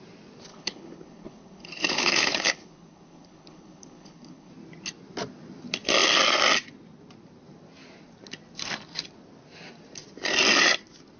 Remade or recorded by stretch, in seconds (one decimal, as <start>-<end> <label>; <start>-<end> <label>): 0.0-0.5 recorded; 0.5-4.5 remade; 4.5-11.2 recorded